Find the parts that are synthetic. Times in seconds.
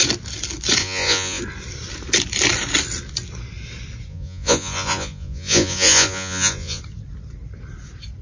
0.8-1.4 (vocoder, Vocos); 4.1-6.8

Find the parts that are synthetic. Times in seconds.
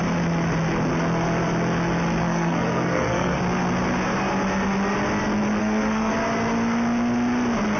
2.2-3.4 (codec, SNAC); 5.6-6.1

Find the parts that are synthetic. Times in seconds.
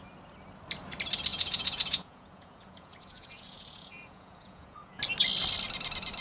1.3-5.0 (vocoder, Vocos)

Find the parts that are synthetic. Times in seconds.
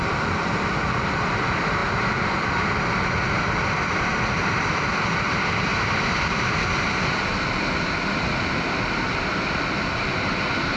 5.7-6.8 (vocoder, BigVGAN v2)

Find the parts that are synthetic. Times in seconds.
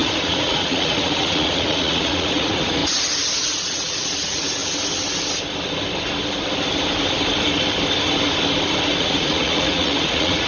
0.0-2.8 (vocoder, Vocos); 3.3-4.6; 9.0-10.5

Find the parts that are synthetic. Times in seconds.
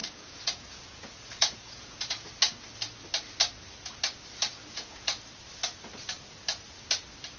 0.0-2.3 (vocoder, Vocos); 4.5-5.2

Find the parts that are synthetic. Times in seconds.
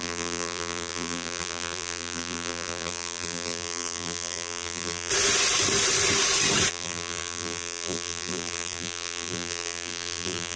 0.0-5.1 (vocoder, BigVGAN v2); 6.7-10.6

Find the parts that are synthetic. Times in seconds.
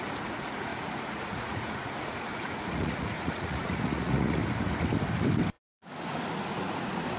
0.0-4.4 (vocoder, Vocos); 6.5-7.2